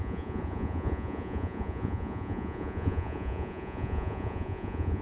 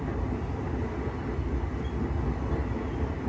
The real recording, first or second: second